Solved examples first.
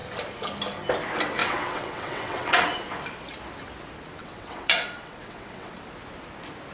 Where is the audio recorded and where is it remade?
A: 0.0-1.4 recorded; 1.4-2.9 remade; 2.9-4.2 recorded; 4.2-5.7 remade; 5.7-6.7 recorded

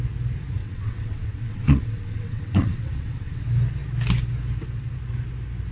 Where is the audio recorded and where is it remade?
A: 0.0-0.6 recorded; 0.6-3.4 remade; 3.4-5.7 recorded